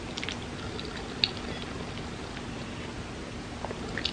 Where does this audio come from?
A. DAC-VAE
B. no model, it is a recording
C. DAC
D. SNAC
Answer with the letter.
B